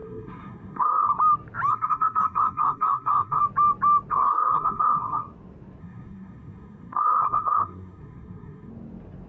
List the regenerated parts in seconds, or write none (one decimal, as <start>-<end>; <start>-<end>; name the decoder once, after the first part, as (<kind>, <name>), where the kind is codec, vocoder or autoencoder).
0.0-1.1 (codec, SNAC); 1.7-3.4; 4.1-5.2; 5.8-8.7